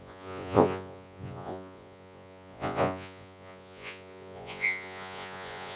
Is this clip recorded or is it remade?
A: remade